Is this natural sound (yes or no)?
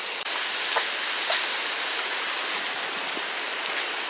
yes